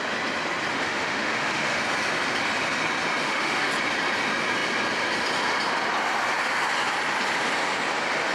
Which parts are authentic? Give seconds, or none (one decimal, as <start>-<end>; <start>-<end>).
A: 0.0-0.7; 1.8-3.2; 3.7-8.3

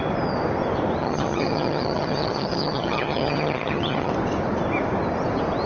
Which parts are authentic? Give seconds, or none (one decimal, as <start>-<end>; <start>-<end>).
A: 0.0-1.0; 4.1-5.7

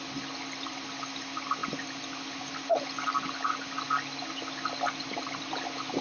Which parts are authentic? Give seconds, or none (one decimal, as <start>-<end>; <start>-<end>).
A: 0.0-6.0